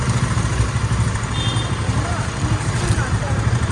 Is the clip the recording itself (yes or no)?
no